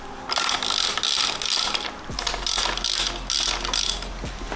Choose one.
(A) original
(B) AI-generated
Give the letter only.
A